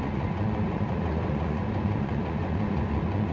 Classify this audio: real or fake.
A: fake